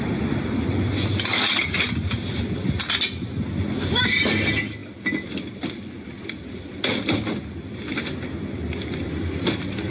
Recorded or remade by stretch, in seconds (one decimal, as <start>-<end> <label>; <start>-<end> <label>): 0.0-9.9 recorded